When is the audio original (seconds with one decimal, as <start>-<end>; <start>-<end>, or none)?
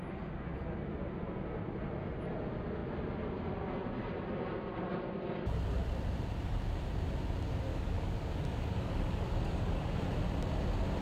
0.0-7.7; 10.0-11.0